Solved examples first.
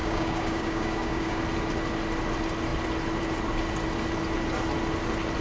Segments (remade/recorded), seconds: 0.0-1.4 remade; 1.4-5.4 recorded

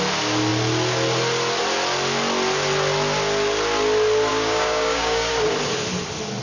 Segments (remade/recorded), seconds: 0.0-4.3 recorded; 4.3-5.3 remade; 5.3-6.4 recorded

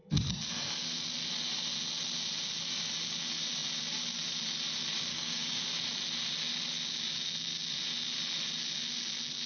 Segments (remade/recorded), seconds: 0.0-5.1 recorded; 5.1-5.6 remade; 5.6-9.5 recorded